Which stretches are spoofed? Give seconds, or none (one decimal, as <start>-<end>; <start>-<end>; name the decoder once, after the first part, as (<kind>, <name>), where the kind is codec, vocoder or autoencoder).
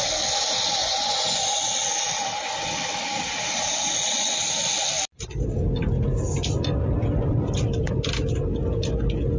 0.8-1.7 (vocoder, Vocos)